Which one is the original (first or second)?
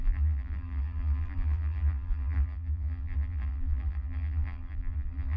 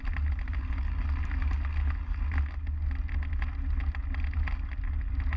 second